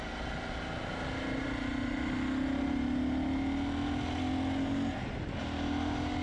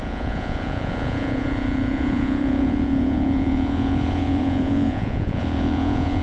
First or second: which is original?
first